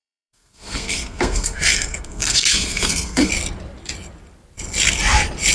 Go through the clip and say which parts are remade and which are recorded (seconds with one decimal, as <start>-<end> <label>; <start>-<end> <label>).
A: 0.0-3.3 remade; 3.3-5.5 recorded